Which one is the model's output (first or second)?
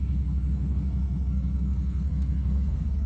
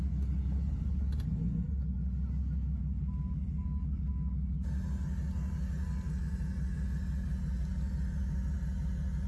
first